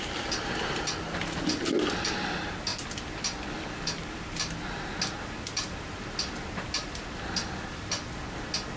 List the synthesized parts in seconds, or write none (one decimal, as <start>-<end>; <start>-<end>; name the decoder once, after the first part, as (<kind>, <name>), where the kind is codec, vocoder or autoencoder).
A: none